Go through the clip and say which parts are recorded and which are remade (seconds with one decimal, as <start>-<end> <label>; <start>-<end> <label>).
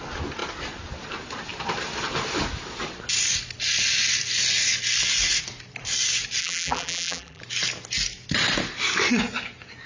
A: 0.0-6.4 recorded; 6.4-7.4 remade; 7.4-9.9 recorded